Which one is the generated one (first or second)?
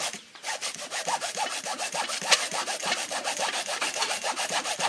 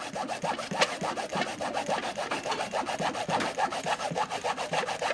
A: first